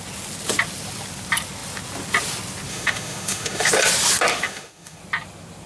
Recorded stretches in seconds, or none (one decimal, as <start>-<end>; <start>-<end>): 0.0-2.7; 3.7-4.3; 5.0-5.7